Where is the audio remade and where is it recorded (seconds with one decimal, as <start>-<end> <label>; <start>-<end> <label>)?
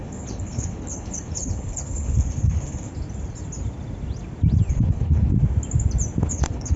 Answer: 0.0-2.9 remade; 2.9-4.7 recorded; 4.7-5.3 remade; 5.3-6.3 recorded; 6.3-6.8 remade